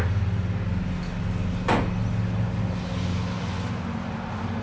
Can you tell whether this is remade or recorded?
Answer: recorded